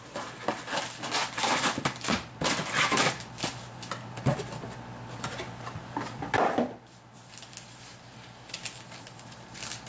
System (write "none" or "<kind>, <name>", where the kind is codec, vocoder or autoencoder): none